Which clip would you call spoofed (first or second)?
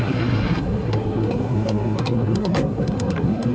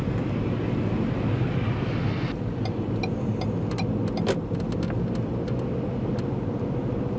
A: first